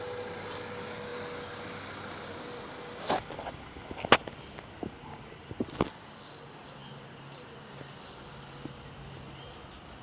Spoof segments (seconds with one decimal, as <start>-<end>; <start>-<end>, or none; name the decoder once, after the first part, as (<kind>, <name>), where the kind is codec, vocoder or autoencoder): 6.8-8.0 (vocoder, BigVGAN v2)